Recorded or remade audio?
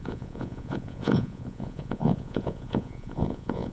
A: remade